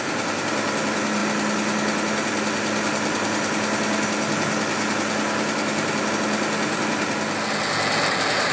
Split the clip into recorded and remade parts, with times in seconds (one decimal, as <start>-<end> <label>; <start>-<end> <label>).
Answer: 0.0-8.5 recorded